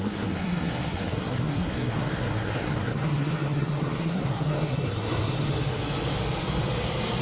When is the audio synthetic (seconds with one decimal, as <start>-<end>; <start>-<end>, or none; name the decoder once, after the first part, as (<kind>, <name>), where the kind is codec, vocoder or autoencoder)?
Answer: 0.0-5.5 (codec, SNAC)